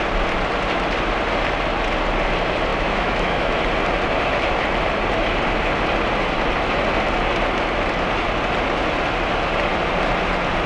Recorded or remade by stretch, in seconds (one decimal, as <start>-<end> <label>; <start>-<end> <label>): 0.0-2.7 recorded; 2.7-3.5 remade; 3.5-10.7 recorded